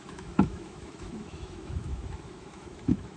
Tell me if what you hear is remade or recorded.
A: remade